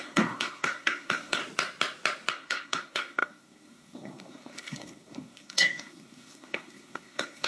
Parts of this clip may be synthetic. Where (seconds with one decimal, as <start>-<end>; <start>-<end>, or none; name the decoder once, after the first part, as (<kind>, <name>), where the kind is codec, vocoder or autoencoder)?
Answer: 0.0-1.4 (codec, SNAC); 2.3-7.5